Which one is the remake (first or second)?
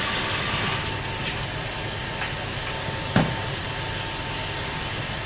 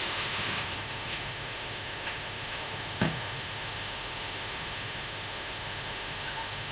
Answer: second